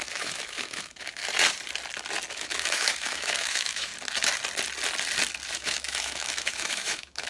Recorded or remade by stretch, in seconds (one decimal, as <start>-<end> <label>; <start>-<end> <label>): 0.0-1.2 remade; 1.2-2.3 recorded; 2.3-3.9 remade; 3.9-5.5 recorded; 5.5-7.3 remade